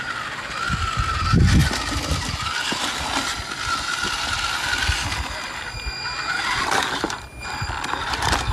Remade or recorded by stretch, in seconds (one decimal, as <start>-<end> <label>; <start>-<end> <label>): 0.0-8.5 recorded